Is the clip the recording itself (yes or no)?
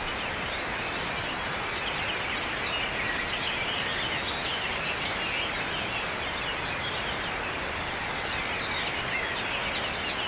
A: yes